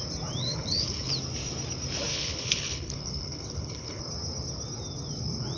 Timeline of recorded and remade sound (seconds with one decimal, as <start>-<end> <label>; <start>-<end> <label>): 0.0-0.4 recorded; 0.4-1.1 remade; 1.1-2.1 recorded; 2.1-4.0 remade; 4.0-5.6 recorded